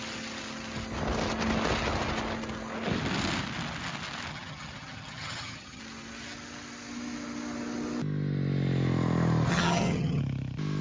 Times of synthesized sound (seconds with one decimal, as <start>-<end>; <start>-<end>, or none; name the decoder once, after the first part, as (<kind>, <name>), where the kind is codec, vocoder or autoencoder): 4.3-5.8 (vocoder, HiFi-GAN); 9.5-10.2